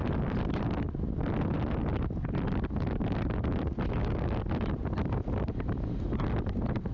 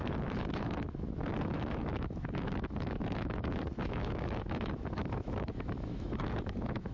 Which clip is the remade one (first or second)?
second